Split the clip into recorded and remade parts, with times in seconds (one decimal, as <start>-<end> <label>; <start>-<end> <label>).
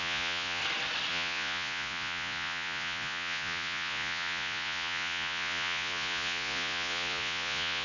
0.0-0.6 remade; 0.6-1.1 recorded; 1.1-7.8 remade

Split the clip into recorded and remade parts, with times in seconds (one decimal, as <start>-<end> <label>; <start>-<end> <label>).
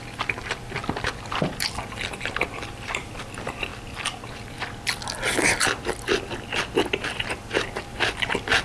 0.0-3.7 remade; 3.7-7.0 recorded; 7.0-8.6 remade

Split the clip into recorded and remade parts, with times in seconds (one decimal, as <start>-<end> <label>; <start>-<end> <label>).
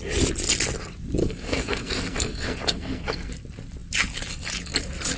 0.0-1.2 recorded; 1.2-3.3 remade; 3.3-5.2 recorded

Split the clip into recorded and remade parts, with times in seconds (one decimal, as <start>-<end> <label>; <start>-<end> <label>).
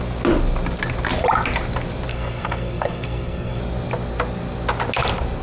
0.0-2.1 recorded; 2.1-3.6 remade; 3.6-5.4 recorded